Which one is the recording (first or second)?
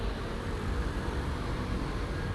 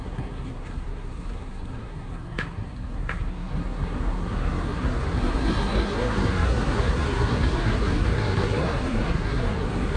first